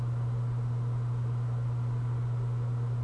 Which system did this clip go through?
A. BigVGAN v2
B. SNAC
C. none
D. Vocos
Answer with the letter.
C